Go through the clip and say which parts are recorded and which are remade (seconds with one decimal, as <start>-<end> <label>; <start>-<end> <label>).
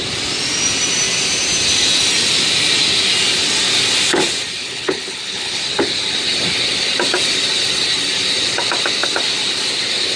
0.0-4.6 recorded; 4.6-5.6 remade; 5.6-10.2 recorded